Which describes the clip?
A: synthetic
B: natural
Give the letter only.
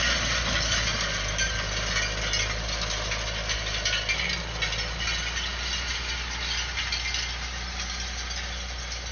B